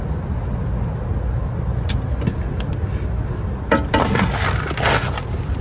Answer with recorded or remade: recorded